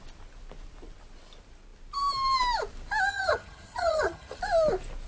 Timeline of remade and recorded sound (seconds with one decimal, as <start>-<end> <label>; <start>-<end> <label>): 0.0-3.1 recorded; 3.1-4.4 remade; 4.4-5.1 recorded

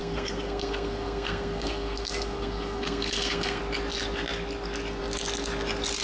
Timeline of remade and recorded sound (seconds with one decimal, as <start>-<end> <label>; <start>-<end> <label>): 0.0-3.6 remade; 3.6-6.0 recorded

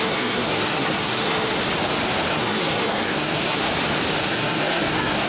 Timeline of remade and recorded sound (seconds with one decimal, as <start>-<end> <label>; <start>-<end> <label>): 0.0-1.5 remade; 1.5-2.3 recorded; 2.3-3.7 remade; 3.7-4.2 recorded; 4.2-5.3 remade

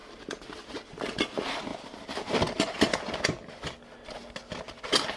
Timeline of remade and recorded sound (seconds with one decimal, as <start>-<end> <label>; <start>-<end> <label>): 0.0-0.8 remade; 0.8-5.2 recorded

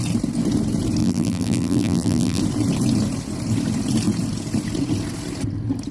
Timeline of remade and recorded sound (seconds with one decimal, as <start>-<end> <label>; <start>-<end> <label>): 0.0-1.0 recorded; 1.0-2.4 remade; 2.4-5.9 recorded

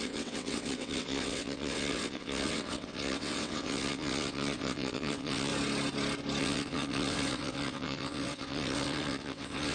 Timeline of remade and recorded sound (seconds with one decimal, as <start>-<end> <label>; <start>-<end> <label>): 0.0-5.5 remade; 5.5-6.4 recorded; 6.4-9.7 remade

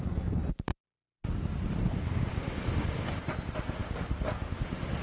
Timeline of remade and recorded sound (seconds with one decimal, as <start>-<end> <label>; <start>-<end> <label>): 0.0-5.0 recorded

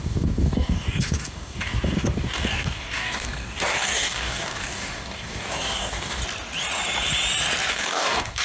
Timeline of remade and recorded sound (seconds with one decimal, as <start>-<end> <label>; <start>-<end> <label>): 0.0-6.2 remade; 6.2-7.7 recorded; 7.7-8.4 remade